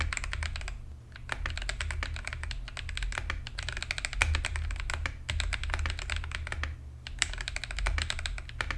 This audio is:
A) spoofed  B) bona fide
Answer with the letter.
B